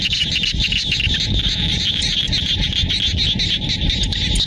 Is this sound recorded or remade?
recorded